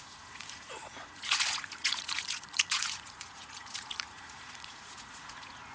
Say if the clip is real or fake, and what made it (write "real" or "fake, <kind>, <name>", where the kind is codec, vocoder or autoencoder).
fake, vocoder, Vocos